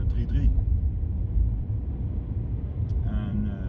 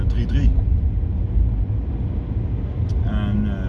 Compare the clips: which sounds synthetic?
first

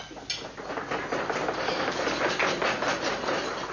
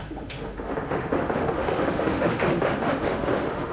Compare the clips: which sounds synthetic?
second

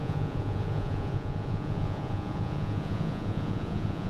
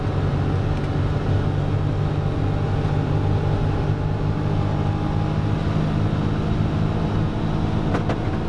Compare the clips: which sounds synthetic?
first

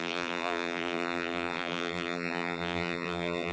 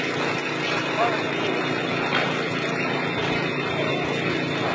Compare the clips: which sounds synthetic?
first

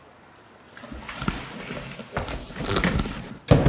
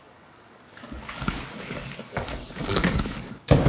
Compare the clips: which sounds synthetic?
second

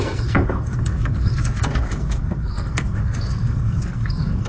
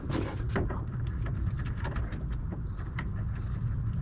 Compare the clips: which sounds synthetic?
first